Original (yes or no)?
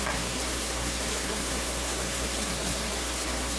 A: no